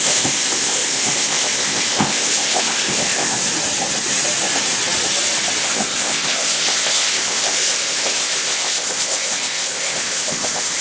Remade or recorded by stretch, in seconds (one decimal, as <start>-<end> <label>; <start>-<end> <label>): 0.0-3.4 remade; 3.4-5.6 recorded; 5.6-10.8 remade